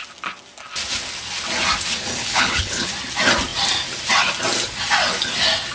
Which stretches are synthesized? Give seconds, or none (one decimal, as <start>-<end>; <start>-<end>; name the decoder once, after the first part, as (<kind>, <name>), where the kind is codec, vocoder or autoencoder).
2.2-2.9 (codec, HILCodec)